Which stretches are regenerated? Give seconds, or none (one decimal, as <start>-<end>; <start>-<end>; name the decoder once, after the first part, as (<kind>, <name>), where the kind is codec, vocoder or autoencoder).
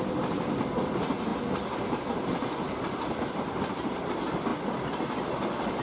none